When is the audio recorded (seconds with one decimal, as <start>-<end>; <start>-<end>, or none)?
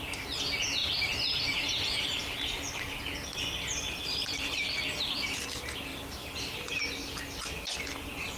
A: 0.0-0.8; 4.6-8.4